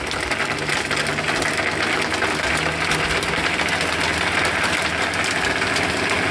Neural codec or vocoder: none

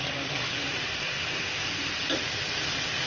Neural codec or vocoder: none